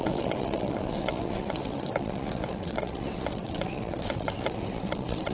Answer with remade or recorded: remade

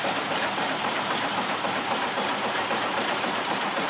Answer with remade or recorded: remade